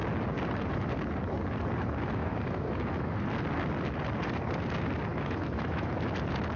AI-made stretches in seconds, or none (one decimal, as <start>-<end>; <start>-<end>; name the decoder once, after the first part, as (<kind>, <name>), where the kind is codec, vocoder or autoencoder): 2.2-3.3 (autoencoder, DAC-VAE); 5.1-5.9